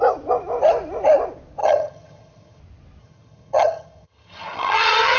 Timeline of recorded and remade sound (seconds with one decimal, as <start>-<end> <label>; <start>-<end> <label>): 0.0-1.6 recorded; 1.6-2.6 remade; 2.6-3.0 recorded; 3.0-5.2 remade

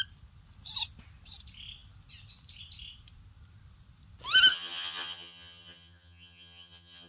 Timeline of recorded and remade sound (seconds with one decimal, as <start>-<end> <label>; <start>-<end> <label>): 0.0-4.5 recorded; 4.5-7.1 remade

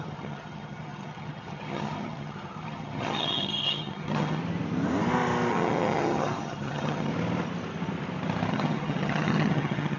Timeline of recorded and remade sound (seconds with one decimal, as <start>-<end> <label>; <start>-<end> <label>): 0.0-4.4 remade; 4.4-5.5 recorded; 5.5-7.1 remade; 7.1-8.5 recorded; 8.5-10.0 remade